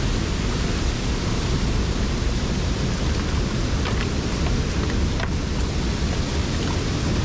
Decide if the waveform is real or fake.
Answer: real